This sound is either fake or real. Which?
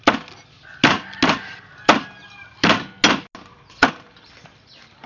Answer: real